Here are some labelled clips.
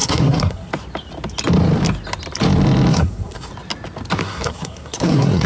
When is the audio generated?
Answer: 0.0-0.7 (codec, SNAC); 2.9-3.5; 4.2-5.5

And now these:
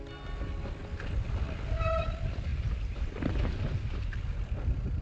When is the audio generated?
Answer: 2.5-4.2 (vocoder, BigVGAN v2)

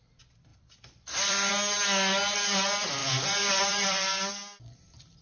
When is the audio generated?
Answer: 0.5-1.5 (vocoder, BigVGAN v2); 3.0-4.3

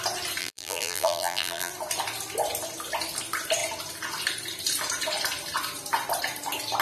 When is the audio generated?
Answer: 0.4-1.7 (vocoder, BigVGAN v2)

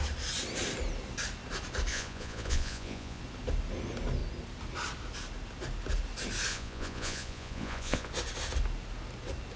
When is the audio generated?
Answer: 1.9-3.2 (vocoder, Vocos); 6.5-8.1

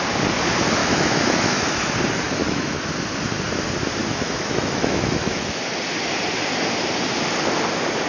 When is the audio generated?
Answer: 0.8-1.9 (autoencoder, DAC-VAE); 2.4-2.9; 4.0-5.6

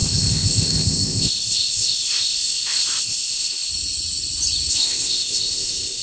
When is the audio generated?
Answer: 0.0-3.7 (codec, ZipCodec); 4.7-6.0

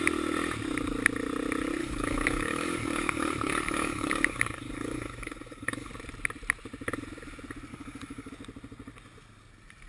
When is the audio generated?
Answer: 1.8-5.9 (codec, DAC); 7.7-8.3